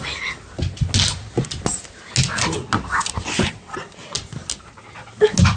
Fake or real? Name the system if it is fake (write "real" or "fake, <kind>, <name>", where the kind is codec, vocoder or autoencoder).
real